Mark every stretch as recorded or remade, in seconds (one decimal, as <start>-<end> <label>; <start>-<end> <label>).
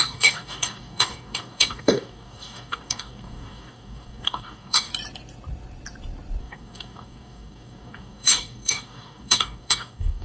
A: 0.0-4.9 remade; 4.9-6.4 recorded; 6.4-10.2 remade